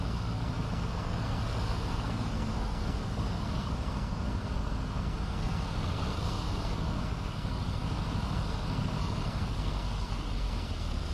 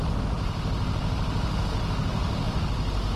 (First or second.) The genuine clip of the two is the second